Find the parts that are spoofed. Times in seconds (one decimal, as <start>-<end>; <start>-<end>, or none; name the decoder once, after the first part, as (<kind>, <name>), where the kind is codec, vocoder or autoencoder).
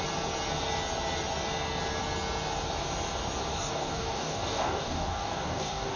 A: 3.5-6.0 (codec, DAC)